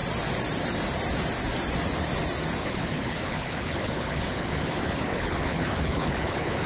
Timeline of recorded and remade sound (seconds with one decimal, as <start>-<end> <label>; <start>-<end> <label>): 0.0-2.6 recorded; 2.6-6.7 remade